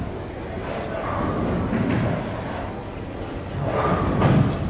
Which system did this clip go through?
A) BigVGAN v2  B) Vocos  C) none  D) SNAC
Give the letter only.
C